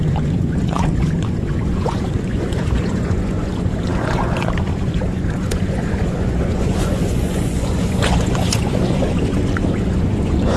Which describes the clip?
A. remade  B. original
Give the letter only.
A